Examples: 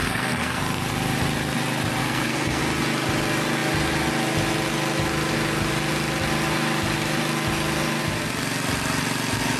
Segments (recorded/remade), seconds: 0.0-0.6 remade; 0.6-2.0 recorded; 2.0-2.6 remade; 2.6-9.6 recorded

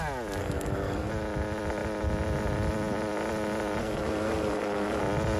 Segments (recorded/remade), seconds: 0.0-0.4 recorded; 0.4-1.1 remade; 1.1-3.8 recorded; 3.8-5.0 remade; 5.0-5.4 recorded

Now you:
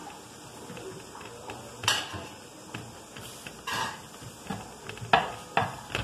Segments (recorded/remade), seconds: 0.0-6.0 recorded

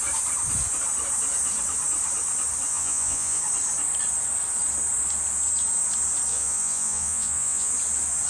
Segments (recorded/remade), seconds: 0.0-2.7 recorded; 2.7-3.4 remade; 3.4-6.3 recorded; 6.3-7.7 remade; 7.7-8.3 recorded